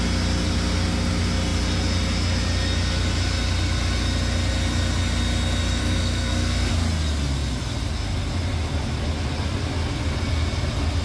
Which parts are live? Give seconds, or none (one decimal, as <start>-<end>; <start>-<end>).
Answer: 0.0-5.8; 6.7-11.0